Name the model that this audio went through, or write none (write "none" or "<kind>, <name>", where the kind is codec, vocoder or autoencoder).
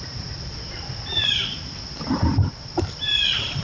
vocoder, BigVGAN v2